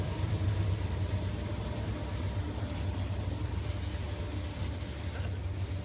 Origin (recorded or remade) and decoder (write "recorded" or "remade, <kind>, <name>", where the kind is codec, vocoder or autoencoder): recorded